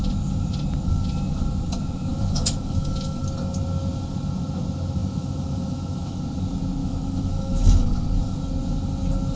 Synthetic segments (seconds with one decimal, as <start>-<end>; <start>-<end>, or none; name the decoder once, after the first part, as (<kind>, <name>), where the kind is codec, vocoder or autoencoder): 2.1-3.2 (autoencoder, DAC-VAE); 5.0-6.2; 6.8-8.1